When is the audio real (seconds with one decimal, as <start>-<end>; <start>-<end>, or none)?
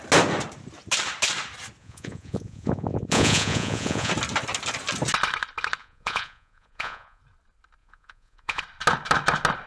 0.0-1.8; 4.1-5.8; 7.2-7.8; 8.6-9.7